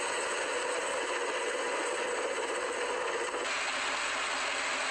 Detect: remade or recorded recorded